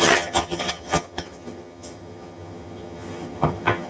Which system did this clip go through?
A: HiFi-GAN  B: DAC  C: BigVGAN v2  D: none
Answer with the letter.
A